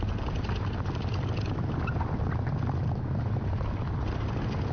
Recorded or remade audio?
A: recorded